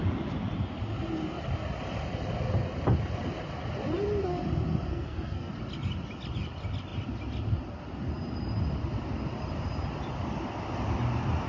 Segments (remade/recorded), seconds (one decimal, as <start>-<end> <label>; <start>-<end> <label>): 0.0-4.9 recorded; 4.9-5.5 remade; 5.5-11.5 recorded